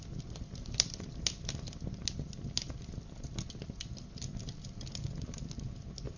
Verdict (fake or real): real